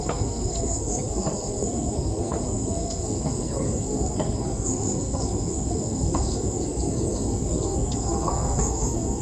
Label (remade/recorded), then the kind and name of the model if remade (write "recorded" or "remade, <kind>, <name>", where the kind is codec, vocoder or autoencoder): remade, codec, SNAC